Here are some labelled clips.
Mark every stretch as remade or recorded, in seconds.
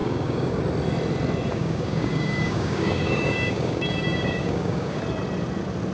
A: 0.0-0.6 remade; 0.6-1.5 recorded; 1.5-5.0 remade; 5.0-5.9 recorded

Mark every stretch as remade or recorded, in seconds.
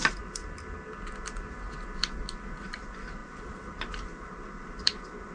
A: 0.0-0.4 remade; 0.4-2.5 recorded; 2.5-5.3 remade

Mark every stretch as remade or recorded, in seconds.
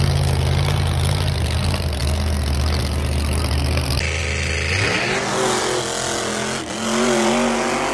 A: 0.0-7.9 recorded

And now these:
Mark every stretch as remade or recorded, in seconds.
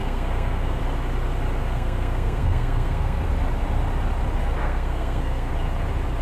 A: 0.0-0.8 remade; 0.8-1.6 recorded; 1.6-3.2 remade; 3.2-4.6 recorded; 4.6-5.5 remade; 5.5-6.2 recorded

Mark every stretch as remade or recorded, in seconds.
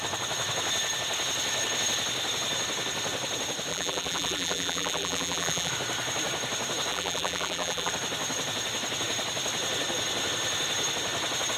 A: 0.0-3.7 recorded; 3.7-5.7 remade; 5.7-6.9 recorded; 6.9-7.9 remade; 7.9-11.6 recorded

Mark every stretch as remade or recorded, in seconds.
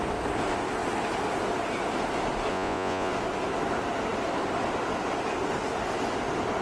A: 0.0-2.5 recorded; 2.5-3.1 remade; 3.1-6.6 recorded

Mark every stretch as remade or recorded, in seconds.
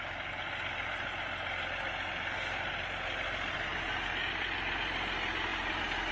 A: 0.0-3.7 recorded; 3.7-4.3 remade; 4.3-6.1 recorded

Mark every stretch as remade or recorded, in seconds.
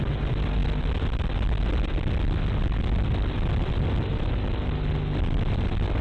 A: 0.0-6.0 recorded